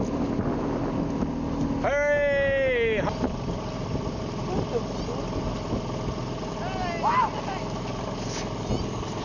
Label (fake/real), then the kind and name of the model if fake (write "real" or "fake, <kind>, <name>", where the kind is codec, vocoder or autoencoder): real